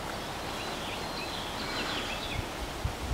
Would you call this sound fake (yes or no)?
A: no